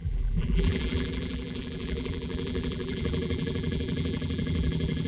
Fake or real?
fake